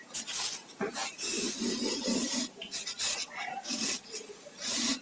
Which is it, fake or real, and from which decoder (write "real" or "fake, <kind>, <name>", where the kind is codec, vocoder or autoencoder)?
real